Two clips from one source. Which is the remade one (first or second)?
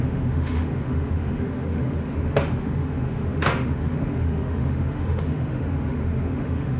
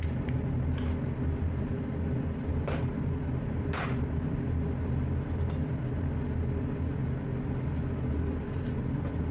first